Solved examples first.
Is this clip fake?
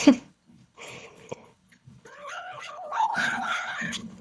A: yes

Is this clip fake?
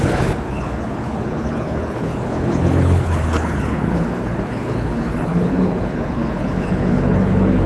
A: yes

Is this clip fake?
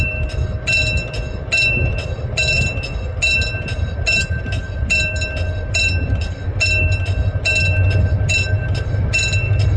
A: no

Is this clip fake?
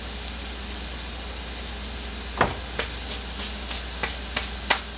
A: no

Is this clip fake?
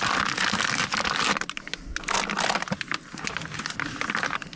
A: no